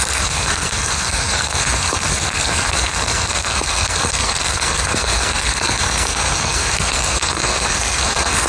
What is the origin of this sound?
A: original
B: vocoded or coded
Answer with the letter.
B